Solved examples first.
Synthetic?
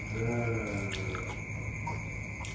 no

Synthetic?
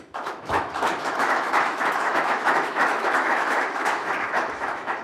yes